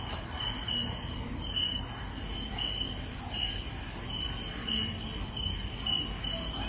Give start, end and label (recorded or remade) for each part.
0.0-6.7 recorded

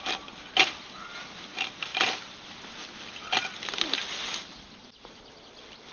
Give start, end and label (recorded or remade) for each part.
0.0-5.9 recorded

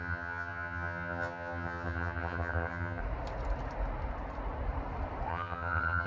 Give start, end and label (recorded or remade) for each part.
0.0-3.0 remade; 3.0-5.3 recorded; 5.3-6.1 remade

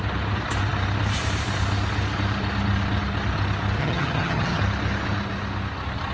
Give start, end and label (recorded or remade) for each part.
0.0-3.8 recorded; 3.8-4.6 remade; 4.6-6.1 recorded

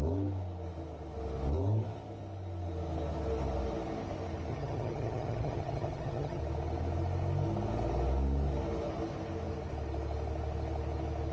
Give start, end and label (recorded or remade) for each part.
0.0-4.5 recorded; 4.5-6.4 remade; 6.4-11.3 recorded

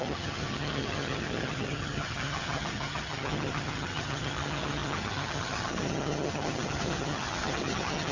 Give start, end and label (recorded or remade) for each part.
0.0-8.1 remade

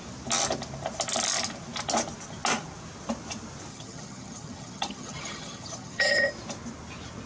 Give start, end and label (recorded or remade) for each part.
0.0-3.7 recorded; 3.7-6.3 remade; 6.3-7.3 recorded

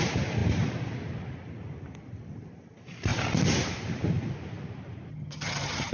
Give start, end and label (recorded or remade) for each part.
0.0-5.1 recorded; 5.1-5.9 remade